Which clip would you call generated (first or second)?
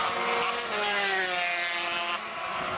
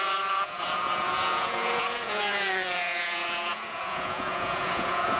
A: second